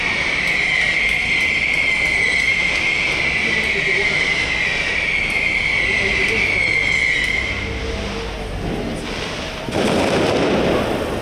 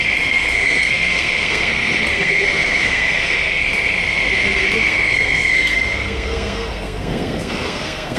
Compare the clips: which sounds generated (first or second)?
second